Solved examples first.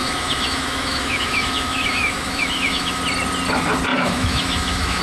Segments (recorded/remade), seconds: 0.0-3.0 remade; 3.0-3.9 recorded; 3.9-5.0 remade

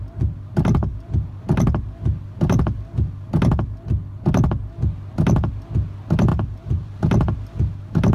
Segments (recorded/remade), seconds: 0.0-0.8 recorded; 0.8-1.4 remade; 1.4-6.3 recorded; 6.3-7.0 remade; 7.0-8.1 recorded

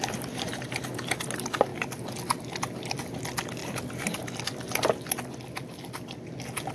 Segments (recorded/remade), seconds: 0.0-3.6 recorded; 3.6-4.3 remade; 4.3-6.7 recorded

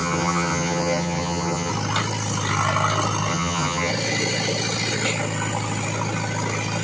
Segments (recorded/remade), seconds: 0.0-1.7 remade; 1.7-3.3 recorded; 3.3-3.9 remade; 3.9-6.8 recorded

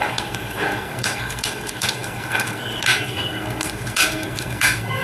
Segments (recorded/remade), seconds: 0.0-5.0 remade